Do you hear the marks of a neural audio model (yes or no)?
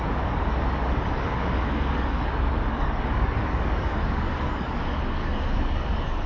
yes